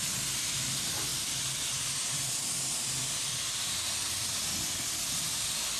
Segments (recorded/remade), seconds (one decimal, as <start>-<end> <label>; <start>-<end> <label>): 0.0-1.1 recorded; 1.1-4.5 remade; 4.5-5.8 recorded